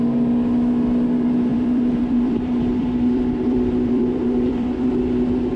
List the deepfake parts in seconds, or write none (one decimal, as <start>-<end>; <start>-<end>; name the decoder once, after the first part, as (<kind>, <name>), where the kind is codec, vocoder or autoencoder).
1.5-4.9 (vocoder, BigVGAN v2)

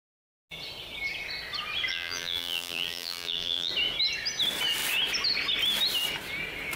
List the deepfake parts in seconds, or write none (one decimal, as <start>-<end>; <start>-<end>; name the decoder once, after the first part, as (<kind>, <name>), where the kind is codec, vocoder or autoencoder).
1.9-3.7 (vocoder, BigVGAN v2)

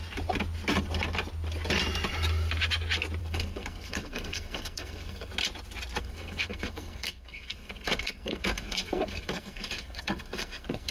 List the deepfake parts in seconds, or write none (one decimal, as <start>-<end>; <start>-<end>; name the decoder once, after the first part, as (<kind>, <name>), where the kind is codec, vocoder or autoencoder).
3.2-5.3 (codec, SNAC); 6.0-10.9

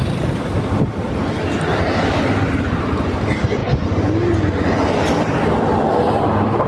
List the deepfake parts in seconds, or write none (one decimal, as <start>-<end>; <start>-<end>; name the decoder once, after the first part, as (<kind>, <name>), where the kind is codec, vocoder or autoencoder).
none

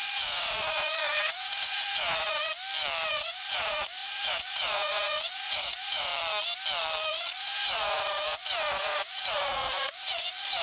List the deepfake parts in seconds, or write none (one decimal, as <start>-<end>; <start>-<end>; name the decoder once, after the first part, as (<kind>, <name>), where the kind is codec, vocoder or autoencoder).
0.0-2.5 (vocoder, Vocos); 3.1-6.1; 7.1-10.6

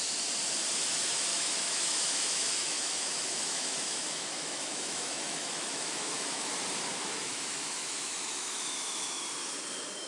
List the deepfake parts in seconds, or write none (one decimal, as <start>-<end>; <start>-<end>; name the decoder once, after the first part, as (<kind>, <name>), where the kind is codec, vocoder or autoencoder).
1.3-6.5 (autoencoder, DAC-VAE); 7.0-9.2

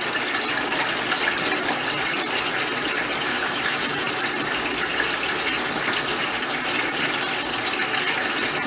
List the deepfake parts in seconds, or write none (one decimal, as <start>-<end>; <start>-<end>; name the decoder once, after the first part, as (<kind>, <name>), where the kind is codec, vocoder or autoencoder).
3.3-3.8 (autoencoder, DAC-VAE)

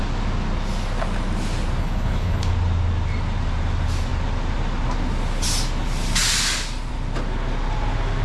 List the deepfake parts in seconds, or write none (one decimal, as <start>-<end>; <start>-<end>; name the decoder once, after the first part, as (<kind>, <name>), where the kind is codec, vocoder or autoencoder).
1.8-2.5 (codec, HILCodec)